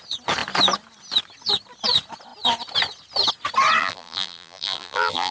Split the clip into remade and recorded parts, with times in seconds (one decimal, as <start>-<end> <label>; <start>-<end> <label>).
0.0-3.8 recorded; 3.8-5.3 remade